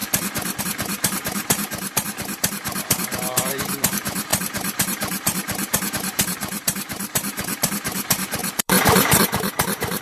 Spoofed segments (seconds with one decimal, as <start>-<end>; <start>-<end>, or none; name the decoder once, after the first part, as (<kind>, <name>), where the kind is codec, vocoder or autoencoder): 0.6-10.0 (vocoder, BigVGAN v2)

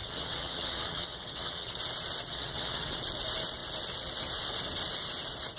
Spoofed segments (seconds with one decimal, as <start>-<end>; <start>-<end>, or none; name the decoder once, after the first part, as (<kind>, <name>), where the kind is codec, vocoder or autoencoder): 0.0-1.7 (vocoder, WaveNeXt); 2.3-3.0

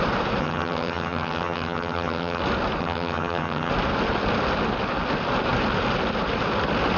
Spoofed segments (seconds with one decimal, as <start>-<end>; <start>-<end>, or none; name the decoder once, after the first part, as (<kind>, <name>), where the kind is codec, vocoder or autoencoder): 0.4-2.4 (vocoder, HiFi-GAN); 2.8-3.7

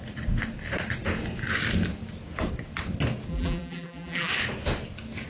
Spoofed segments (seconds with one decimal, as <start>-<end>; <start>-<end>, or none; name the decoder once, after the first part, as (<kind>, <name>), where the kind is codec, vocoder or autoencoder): 3.3-4.3 (vocoder, BigVGAN v2)